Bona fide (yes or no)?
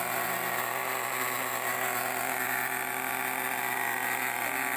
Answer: yes